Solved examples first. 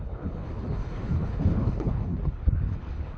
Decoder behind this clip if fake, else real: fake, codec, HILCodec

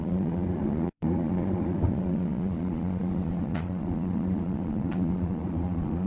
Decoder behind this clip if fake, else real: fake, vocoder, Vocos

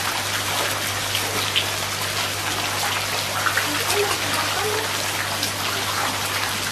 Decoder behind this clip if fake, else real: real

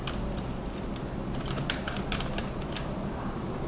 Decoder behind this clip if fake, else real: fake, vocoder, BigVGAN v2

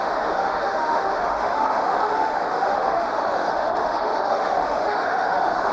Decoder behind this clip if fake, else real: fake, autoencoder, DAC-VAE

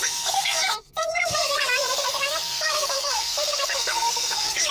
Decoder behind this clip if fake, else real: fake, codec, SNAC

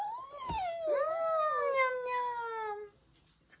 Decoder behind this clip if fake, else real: real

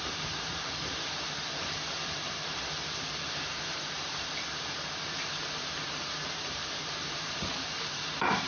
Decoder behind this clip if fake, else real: fake, vocoder, BigVGAN v2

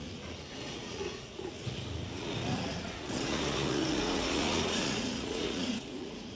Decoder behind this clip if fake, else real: fake, vocoder, Vocos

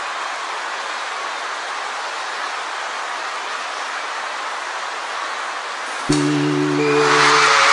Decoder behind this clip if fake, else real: real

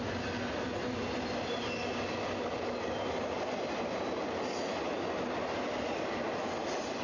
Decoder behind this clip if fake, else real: real